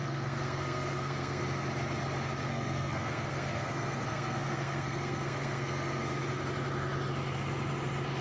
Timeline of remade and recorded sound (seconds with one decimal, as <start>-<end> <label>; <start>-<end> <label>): 0.0-1.4 remade; 1.4-2.4 recorded; 2.4-6.2 remade; 6.2-8.2 recorded